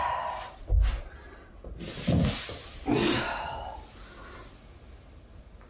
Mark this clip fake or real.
real